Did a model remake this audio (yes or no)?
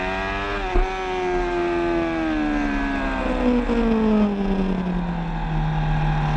no